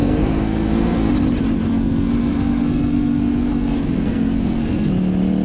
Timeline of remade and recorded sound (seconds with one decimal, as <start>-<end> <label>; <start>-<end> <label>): 0.0-1.1 remade; 1.1-1.7 recorded; 1.7-4.9 remade; 4.9-5.4 recorded